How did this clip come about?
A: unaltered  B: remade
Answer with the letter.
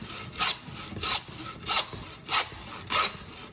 A